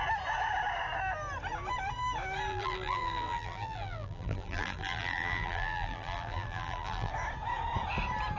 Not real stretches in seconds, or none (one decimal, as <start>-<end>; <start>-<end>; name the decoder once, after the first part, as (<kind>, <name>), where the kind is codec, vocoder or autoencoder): 2.5-7.1 (vocoder, BigVGAN v2)